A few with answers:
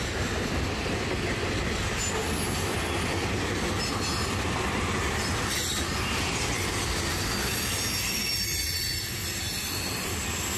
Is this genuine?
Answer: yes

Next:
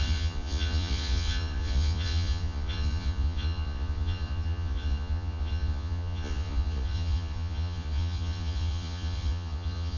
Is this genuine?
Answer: no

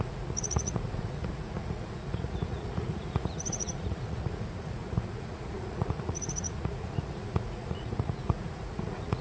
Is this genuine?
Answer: no